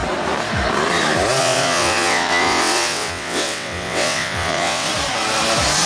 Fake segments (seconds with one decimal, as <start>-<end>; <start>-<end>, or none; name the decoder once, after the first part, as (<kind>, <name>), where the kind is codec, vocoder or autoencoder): 1.4-4.9 (vocoder, WaveNeXt)